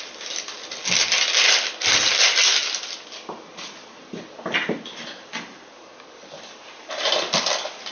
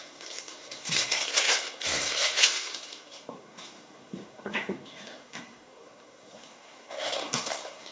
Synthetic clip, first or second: second